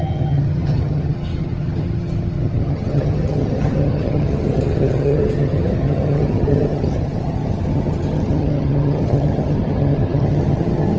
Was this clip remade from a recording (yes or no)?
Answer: yes